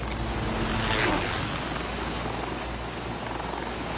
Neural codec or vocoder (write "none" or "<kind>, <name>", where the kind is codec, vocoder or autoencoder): none